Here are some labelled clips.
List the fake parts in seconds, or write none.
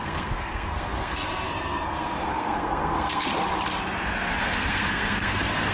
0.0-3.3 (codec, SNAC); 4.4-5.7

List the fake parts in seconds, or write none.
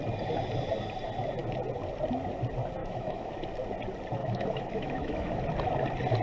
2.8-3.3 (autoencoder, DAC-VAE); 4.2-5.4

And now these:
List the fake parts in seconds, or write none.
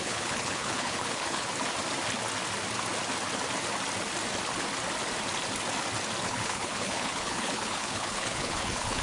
0.0-1.5 (codec, HILCodec); 6.2-9.0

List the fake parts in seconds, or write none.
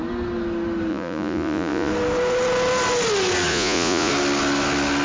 0.9-1.9 (vocoder, Vocos); 3.5-4.1